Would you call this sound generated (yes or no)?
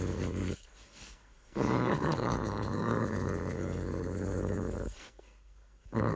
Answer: yes